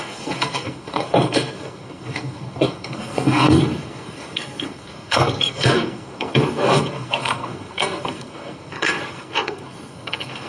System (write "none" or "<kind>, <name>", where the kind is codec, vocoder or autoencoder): codec, SNAC